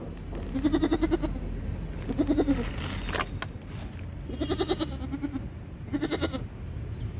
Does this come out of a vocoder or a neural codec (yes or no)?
no